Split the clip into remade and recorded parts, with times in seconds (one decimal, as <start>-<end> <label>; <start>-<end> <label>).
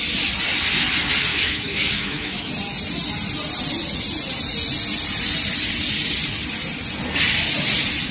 0.0-1.3 recorded; 1.3-2.5 remade; 2.5-8.1 recorded